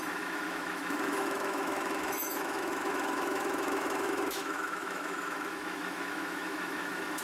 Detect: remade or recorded remade